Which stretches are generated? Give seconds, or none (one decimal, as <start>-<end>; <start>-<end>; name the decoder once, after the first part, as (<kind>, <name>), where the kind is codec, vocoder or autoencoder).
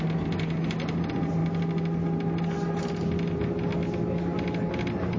none